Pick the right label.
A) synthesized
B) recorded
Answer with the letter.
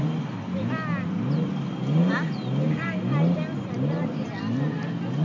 B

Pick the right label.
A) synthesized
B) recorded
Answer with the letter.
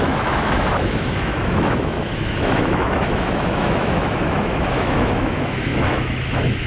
A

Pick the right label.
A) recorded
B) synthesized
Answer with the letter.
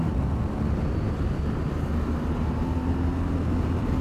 A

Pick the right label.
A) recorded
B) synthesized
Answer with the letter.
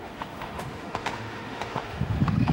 B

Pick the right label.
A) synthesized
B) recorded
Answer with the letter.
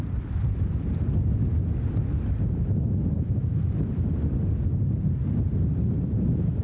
B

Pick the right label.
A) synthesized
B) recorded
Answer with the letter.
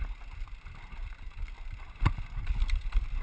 B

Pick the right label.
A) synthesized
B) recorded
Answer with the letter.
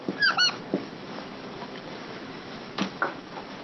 A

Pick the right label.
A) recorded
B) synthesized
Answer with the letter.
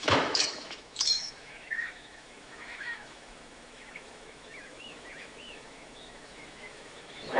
B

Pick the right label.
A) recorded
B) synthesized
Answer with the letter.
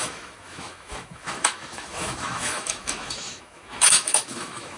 B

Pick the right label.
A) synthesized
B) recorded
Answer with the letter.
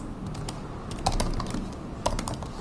B